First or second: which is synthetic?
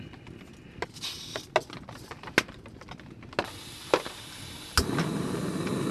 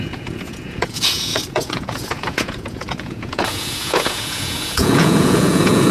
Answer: second